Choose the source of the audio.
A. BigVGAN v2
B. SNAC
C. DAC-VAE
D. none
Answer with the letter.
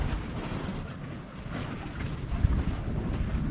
D